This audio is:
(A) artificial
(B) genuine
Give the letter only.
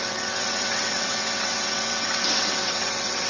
A